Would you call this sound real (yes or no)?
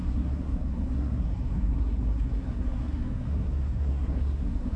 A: no